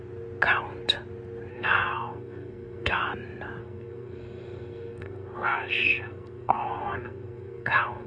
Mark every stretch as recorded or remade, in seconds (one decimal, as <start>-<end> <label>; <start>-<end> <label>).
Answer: 0.0-1.5 recorded; 1.5-3.0 remade; 3.0-3.6 recorded; 3.6-8.1 remade